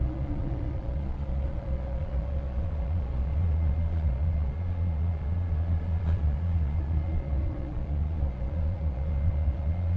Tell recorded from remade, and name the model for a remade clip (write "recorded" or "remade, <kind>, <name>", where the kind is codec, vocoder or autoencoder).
remade, vocoder, Vocos